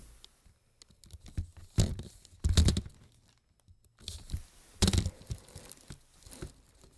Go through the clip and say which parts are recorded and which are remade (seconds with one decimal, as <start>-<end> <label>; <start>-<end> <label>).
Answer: 0.0-7.0 recorded